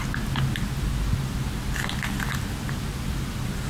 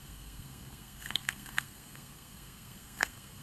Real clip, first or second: first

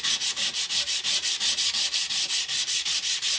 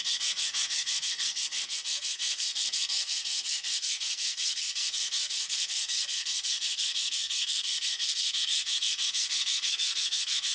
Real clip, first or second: first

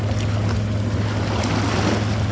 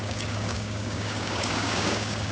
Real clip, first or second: first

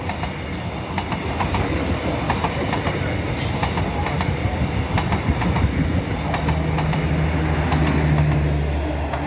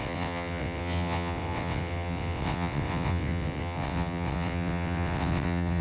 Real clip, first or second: first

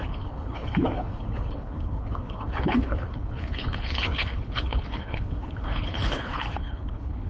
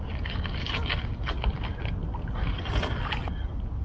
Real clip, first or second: second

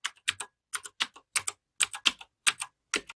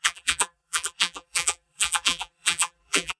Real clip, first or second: first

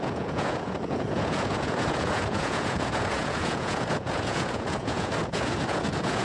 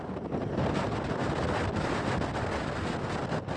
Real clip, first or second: second